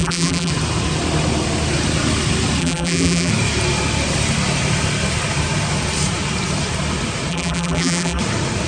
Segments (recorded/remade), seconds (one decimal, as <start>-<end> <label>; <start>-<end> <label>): 0.0-0.5 remade; 0.5-2.6 recorded; 2.6-3.3 remade; 3.3-7.3 recorded; 7.3-8.2 remade; 8.2-8.7 recorded